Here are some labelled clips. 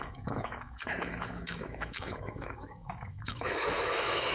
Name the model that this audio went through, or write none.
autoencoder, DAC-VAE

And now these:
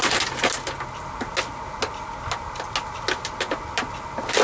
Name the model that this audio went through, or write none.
none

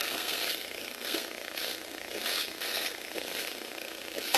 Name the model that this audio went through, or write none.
codec, SNAC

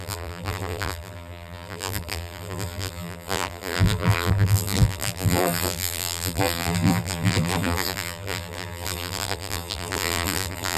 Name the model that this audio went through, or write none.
vocoder, BigVGAN v2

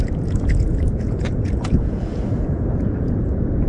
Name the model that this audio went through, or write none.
vocoder, Vocos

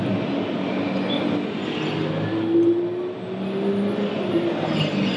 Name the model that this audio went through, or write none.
none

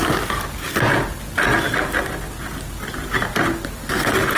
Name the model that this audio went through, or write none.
none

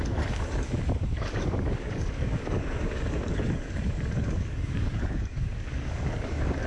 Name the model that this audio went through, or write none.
codec, DAC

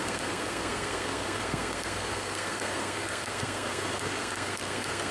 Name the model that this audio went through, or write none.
codec, SNAC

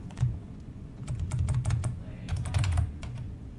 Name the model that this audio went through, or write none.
vocoder, Vocos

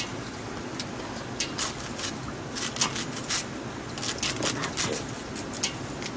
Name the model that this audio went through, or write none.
none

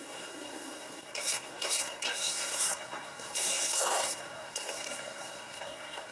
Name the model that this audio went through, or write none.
codec, SNAC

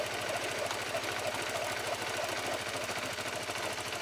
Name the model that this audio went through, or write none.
none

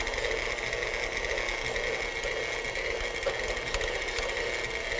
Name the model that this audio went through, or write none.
none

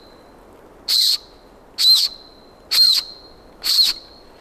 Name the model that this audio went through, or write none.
none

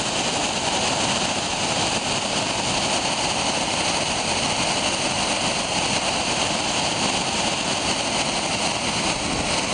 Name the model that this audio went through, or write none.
none